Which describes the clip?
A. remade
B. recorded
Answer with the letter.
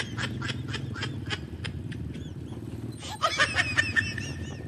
B